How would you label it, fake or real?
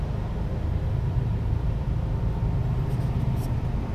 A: fake